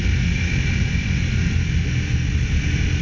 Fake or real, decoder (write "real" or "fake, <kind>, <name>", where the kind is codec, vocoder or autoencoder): real